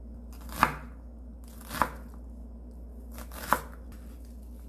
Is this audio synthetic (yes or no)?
no